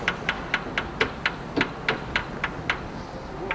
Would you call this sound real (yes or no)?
yes